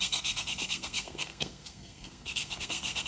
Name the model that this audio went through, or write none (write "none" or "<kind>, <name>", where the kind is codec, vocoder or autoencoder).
codec, SNAC